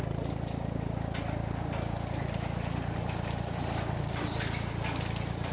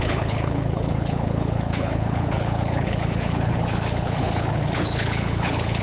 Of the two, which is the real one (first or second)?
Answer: first